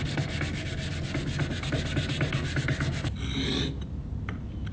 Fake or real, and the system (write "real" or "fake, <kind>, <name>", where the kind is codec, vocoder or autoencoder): real